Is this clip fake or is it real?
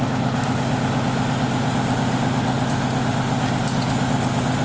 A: real